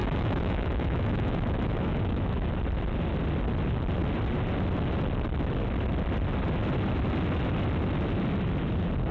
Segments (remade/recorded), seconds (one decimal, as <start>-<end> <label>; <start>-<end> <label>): 0.0-2.5 remade; 2.5-9.1 recorded